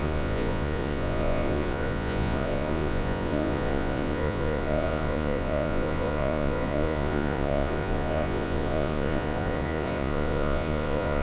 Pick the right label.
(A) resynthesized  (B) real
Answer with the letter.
A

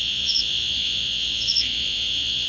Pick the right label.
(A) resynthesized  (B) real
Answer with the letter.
A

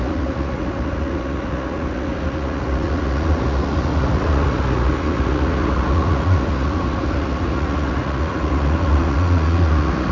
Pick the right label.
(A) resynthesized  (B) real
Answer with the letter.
A